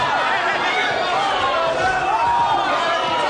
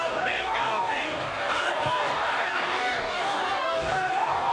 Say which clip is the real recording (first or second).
first